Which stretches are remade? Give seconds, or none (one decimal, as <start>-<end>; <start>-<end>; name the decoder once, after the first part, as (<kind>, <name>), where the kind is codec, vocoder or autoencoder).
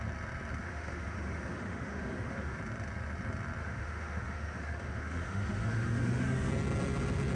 0.6-2.6 (autoencoder, DAC-VAE); 3.6-6.5